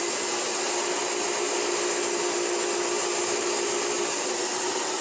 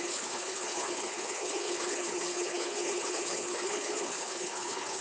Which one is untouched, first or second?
first